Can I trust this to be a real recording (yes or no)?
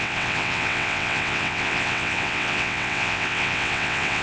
no